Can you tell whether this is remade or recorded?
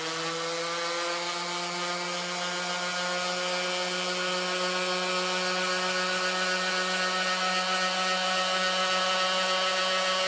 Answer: recorded